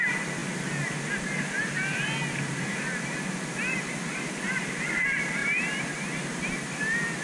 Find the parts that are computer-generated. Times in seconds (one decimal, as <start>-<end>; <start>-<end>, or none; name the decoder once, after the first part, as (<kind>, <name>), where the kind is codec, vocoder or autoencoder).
none